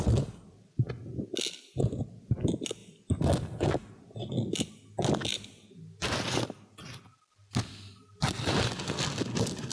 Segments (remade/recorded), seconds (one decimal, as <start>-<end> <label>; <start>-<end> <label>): 0.0-9.7 recorded